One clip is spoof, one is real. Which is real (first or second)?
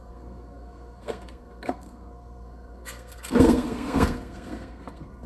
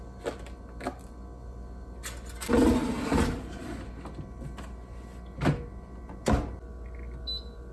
second